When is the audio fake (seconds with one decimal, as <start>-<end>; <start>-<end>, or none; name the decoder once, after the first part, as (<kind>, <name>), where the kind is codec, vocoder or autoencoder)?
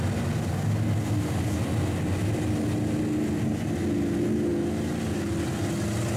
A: none